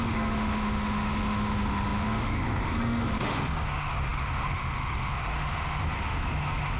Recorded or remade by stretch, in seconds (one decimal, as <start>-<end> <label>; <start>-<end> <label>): 0.0-6.8 remade